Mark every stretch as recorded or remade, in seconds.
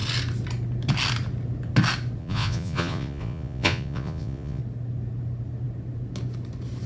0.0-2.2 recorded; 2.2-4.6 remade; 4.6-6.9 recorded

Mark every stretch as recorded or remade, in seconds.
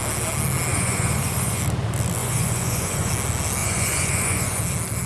0.0-0.7 recorded; 0.7-1.6 remade; 1.6-2.2 recorded; 2.2-3.1 remade; 3.1-3.6 recorded; 3.6-4.6 remade; 4.6-5.1 recorded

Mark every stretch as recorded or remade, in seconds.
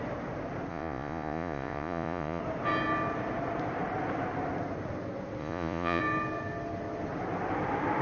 0.0-0.7 recorded; 0.7-2.4 remade; 2.4-5.4 recorded; 5.4-6.0 remade; 6.0-8.0 recorded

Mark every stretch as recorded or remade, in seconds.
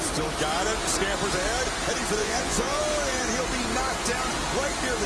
0.0-2.2 recorded; 2.2-2.8 remade; 2.8-5.1 recorded